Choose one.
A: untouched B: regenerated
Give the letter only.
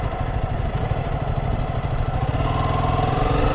A